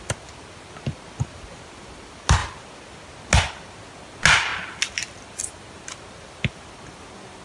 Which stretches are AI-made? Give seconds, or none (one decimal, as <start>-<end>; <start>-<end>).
none